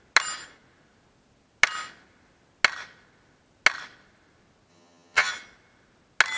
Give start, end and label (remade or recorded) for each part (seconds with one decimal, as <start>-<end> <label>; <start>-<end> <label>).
0.0-4.7 recorded; 4.7-5.3 remade; 5.3-6.4 recorded